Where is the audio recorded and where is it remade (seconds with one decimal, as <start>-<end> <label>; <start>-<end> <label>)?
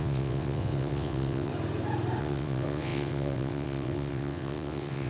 0.0-1.5 remade; 1.5-2.2 recorded; 2.2-5.1 remade